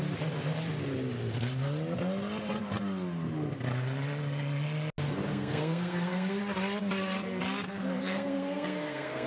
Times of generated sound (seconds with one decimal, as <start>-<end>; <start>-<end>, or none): 5.3-6.4; 8.0-9.3